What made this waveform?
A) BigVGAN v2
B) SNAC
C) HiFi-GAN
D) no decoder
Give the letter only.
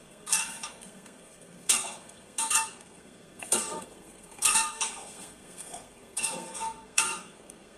B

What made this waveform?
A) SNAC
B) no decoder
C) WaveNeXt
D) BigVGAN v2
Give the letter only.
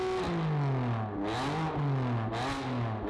B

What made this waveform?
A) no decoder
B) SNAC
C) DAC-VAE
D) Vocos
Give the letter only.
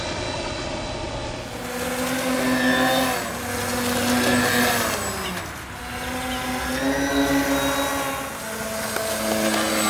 A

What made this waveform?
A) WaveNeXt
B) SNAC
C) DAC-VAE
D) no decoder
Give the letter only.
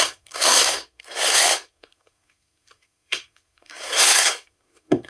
B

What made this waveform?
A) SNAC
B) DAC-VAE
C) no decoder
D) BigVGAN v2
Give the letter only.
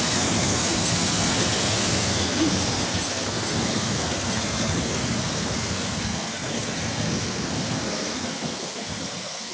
A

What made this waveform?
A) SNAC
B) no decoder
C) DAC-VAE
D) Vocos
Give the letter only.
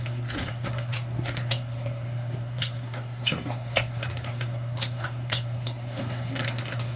A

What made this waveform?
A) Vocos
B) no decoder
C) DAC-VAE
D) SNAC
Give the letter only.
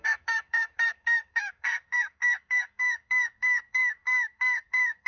D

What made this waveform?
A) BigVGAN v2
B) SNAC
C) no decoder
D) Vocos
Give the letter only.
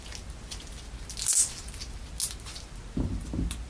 C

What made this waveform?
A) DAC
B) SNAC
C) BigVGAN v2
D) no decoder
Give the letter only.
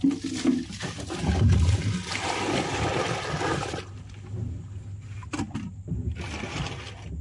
D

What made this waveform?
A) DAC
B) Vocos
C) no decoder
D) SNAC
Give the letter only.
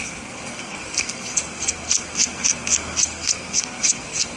D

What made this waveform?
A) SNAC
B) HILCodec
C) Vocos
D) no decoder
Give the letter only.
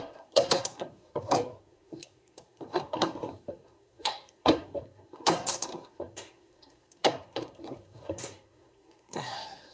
A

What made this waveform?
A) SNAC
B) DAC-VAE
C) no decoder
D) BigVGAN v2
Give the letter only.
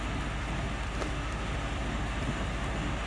C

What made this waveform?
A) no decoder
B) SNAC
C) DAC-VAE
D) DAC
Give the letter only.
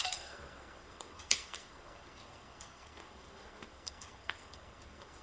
B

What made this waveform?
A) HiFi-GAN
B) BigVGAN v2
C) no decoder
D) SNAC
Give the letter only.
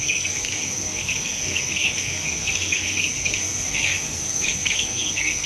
D